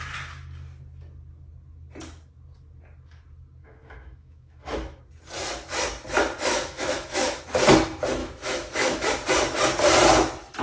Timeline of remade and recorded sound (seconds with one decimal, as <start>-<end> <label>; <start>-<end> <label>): 0.0-3.6 recorded; 3.6-5.0 remade; 5.0-6.5 recorded; 6.5-7.4 remade; 7.4-8.2 recorded; 8.2-9.1 remade; 9.1-10.6 recorded